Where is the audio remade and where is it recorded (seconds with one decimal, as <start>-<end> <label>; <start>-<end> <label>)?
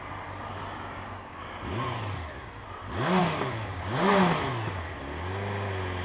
0.0-0.5 recorded; 0.5-1.4 remade; 1.4-3.2 recorded; 3.2-4.1 remade; 4.1-6.0 recorded